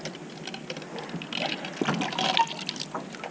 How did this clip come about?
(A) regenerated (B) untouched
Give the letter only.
B